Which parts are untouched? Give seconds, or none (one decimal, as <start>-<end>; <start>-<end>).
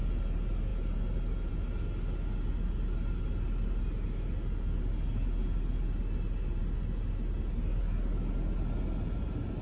0.0-9.6